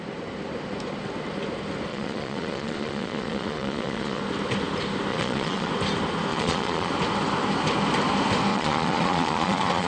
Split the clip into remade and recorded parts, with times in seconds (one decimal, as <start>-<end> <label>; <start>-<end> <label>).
0.0-1.9 recorded; 1.9-4.2 remade; 4.2-5.1 recorded; 5.1-5.7 remade; 5.7-6.3 recorded; 6.3-6.9 remade; 6.9-8.5 recorded; 8.5-9.9 remade